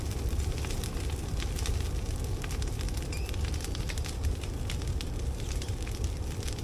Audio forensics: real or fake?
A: real